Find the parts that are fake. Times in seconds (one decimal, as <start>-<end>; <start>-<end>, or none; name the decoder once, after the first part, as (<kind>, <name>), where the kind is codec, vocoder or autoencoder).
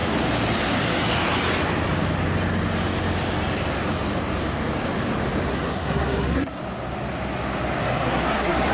5.5-6.6 (codec, SNAC); 7.8-8.7